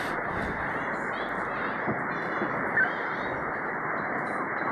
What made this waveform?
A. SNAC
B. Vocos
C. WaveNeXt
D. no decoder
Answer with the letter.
D